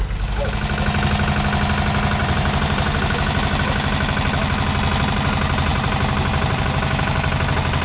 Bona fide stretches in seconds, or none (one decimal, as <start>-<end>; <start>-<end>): 0.0-2.2; 3.0-5.7; 6.6-7.8

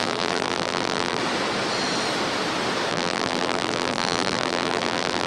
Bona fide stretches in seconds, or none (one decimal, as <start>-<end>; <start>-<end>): 1.2-2.9

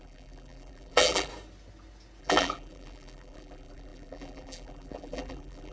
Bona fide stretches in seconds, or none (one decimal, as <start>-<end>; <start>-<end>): 1.3-2.2